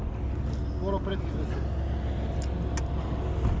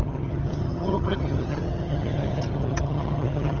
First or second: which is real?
first